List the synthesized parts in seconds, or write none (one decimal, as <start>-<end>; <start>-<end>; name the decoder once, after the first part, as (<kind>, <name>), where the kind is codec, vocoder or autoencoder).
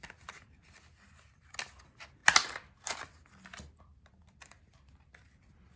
none